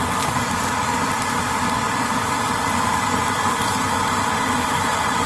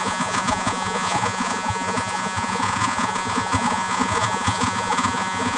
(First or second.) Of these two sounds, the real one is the first